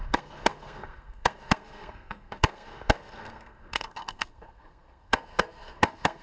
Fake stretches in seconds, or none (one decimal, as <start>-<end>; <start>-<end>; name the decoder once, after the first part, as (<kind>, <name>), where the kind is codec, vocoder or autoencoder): 0.0-6.2 (codec, SNAC)